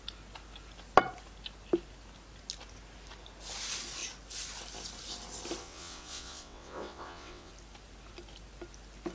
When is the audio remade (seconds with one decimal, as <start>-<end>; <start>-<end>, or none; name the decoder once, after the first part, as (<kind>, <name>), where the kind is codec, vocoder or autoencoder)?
5.6-7.5 (vocoder, WaveNeXt)